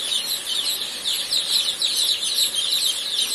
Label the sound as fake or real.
real